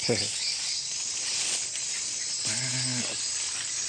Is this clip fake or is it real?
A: real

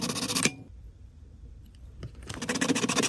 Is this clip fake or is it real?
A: fake